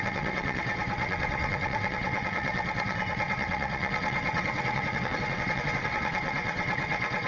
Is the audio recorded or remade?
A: remade